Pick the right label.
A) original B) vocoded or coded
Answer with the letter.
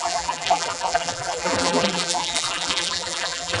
B